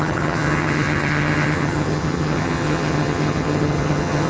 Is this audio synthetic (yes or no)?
yes